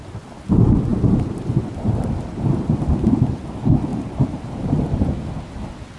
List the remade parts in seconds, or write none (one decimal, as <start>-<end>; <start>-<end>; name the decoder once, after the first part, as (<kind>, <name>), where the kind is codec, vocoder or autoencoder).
3.9-5.4 (vocoder, BigVGAN v2)